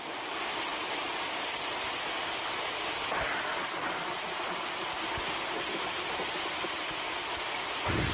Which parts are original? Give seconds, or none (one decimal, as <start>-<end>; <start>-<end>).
0.0-8.1